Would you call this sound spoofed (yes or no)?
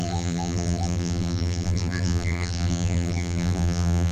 yes